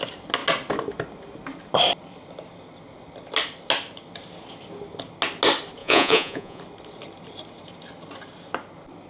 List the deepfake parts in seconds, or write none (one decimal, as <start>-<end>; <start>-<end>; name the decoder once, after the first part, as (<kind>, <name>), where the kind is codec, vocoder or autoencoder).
5.8-6.6 (vocoder, Vocos)